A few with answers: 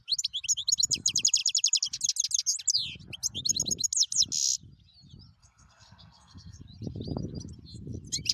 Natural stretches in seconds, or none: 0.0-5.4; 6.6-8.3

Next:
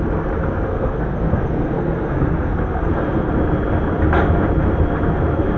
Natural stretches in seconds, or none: 0.0-0.7; 3.3-5.6